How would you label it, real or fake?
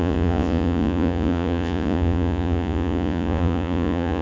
fake